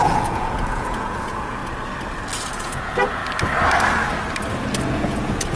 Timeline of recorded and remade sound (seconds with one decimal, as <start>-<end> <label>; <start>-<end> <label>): 0.0-1.6 remade; 1.6-2.5 recorded; 2.5-3.2 remade; 3.2-4.9 recorded; 4.9-5.6 remade